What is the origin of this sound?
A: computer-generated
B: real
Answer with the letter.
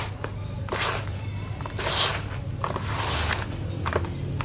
B